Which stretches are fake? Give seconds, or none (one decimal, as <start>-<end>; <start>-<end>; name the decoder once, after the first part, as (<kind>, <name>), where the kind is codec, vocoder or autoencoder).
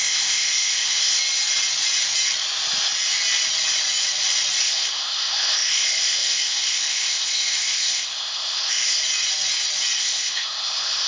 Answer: 0.0-1.2 (codec, ZipCodec); 4.6-9.0; 10.0-11.1